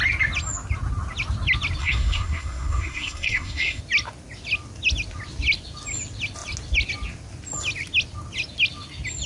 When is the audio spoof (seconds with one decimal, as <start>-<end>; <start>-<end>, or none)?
1.8-3.8